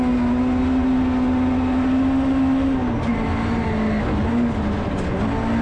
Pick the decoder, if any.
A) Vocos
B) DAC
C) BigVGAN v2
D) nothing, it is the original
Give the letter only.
D